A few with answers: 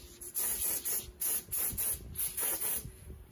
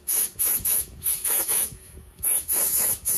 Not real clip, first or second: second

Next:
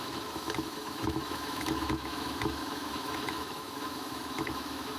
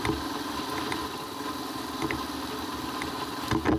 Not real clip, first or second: first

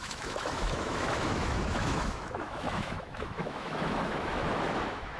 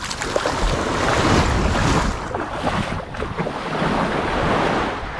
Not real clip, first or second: first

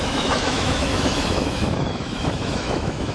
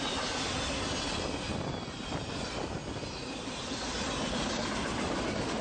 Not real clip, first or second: first